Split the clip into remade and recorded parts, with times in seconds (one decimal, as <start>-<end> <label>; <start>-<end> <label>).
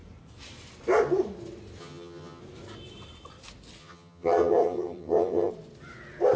0.0-1.8 recorded; 1.8-2.4 remade; 2.4-3.8 recorded; 3.8-5.5 remade; 5.5-6.4 recorded